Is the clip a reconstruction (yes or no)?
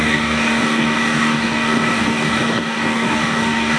yes